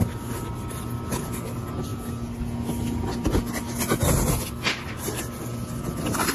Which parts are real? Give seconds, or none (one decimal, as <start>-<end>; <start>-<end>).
0.0-6.3